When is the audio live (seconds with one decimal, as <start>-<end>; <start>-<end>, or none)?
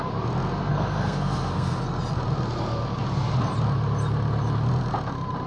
0.0-0.7; 1.8-5.5